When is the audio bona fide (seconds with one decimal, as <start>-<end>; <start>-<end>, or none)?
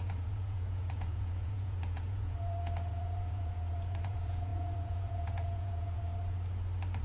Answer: 6.1-7.0